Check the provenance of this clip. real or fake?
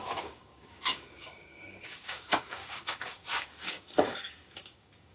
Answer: fake